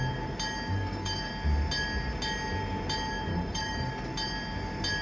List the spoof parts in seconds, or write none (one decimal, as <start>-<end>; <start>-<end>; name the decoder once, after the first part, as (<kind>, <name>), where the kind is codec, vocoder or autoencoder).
0.7-1.3 (codec, DAC); 3.3-3.9